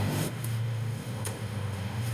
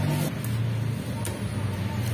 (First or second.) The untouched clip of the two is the second